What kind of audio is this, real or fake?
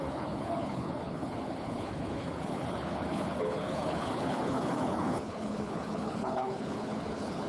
fake